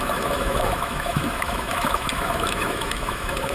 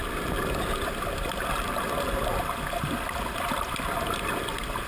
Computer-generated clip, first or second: first